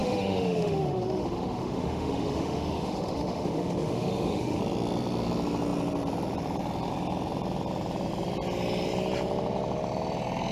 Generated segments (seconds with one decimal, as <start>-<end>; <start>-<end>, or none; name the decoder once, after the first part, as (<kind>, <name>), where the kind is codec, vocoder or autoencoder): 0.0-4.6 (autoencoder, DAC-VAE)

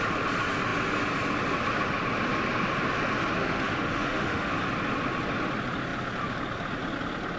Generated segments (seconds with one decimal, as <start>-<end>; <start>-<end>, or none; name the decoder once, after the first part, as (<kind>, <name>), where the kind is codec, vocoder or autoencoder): 3.4-4.5 (autoencoder, DAC-VAE)

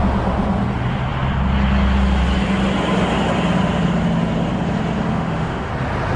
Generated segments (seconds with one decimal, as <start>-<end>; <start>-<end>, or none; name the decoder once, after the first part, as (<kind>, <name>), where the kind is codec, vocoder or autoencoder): 5.1-5.7 (autoencoder, DAC-VAE)

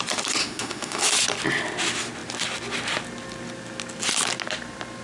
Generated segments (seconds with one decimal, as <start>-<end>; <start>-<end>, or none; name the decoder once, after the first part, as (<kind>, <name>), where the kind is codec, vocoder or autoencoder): 0.4-1.0 (autoencoder, DAC-VAE)